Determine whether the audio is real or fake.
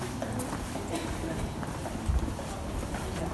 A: real